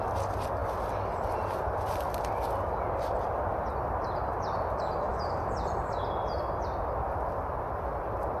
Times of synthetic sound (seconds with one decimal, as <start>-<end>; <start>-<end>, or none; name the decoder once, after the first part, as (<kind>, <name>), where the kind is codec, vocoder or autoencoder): none